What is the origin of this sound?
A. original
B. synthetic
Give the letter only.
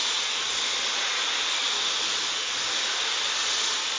A